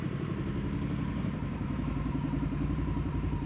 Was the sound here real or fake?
fake